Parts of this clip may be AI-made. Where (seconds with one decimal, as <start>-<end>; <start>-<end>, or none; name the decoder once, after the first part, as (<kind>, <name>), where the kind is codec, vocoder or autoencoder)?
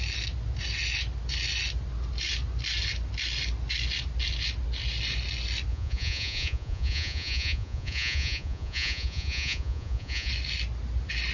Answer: 5.7-10.3 (vocoder, Vocos)